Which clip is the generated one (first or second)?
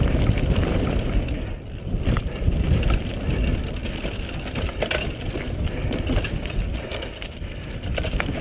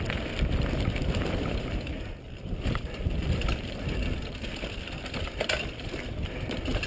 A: second